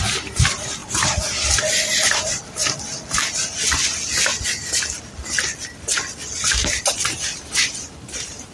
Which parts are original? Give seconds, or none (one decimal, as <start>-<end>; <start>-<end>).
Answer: 2.6-6.8